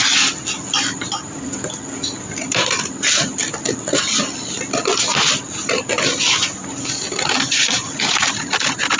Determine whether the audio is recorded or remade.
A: recorded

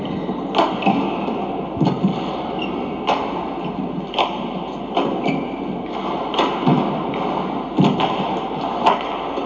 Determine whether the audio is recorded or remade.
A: recorded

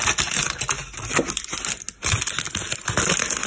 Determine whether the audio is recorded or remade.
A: recorded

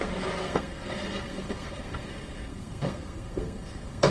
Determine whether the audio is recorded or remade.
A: remade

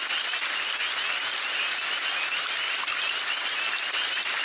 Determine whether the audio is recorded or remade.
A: recorded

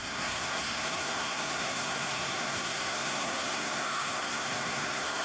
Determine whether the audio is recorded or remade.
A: remade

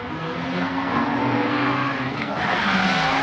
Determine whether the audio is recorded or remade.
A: remade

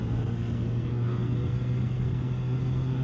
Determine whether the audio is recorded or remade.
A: remade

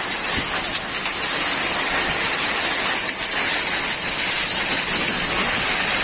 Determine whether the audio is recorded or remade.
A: recorded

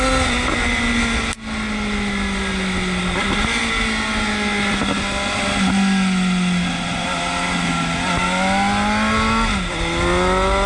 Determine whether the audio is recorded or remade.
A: recorded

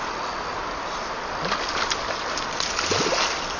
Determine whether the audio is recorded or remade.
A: recorded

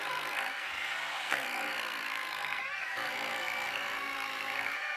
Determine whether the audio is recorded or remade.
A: remade